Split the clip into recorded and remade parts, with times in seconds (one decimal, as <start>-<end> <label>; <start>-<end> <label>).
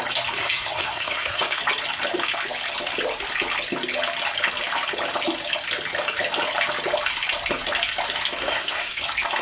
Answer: 0.0-0.4 recorded; 0.4-1.6 remade; 1.6-8.4 recorded; 8.4-9.0 remade; 9.0-9.4 recorded